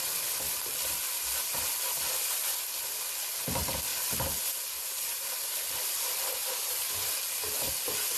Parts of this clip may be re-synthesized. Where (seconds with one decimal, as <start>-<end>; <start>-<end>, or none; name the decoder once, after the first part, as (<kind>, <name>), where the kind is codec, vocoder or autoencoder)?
none